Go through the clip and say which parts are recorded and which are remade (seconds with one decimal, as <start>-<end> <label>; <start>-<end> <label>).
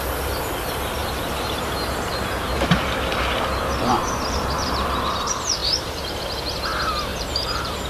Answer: 0.0-1.0 recorded; 1.0-5.1 remade; 5.1-5.6 recorded; 5.6-6.2 remade; 6.2-7.1 recorded; 7.1-7.9 remade